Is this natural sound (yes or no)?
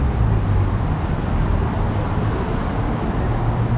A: yes